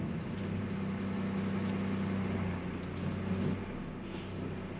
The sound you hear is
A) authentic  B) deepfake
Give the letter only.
A